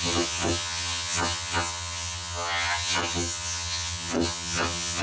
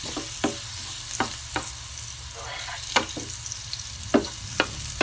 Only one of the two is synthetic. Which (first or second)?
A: first